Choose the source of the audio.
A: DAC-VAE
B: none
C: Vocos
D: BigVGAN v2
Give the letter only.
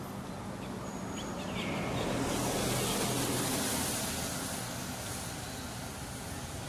B